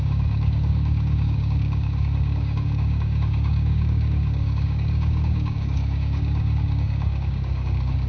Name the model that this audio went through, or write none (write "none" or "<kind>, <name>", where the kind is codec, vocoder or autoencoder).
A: codec, DAC